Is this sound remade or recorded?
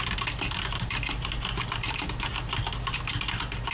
recorded